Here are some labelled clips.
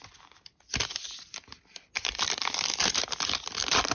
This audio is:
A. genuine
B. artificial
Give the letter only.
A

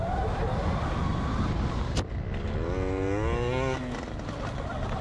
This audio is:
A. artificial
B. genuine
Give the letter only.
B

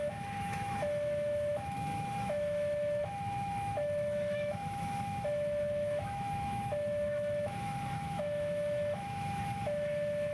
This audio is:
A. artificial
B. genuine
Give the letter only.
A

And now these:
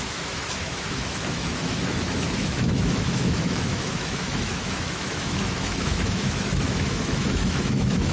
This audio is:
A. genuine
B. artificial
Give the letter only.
B